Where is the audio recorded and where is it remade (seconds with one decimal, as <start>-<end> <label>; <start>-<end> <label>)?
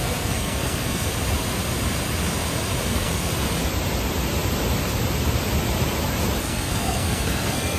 0.0-1.1 remade; 1.1-2.8 recorded; 2.8-3.3 remade; 3.3-6.4 recorded; 6.4-7.8 remade